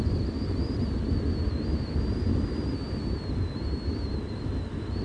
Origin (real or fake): real